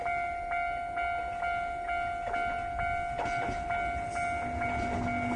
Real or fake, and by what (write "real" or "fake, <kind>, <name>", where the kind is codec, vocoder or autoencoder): real